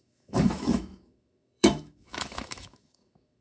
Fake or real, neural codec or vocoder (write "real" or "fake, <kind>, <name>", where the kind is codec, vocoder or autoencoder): fake, autoencoder, DAC-VAE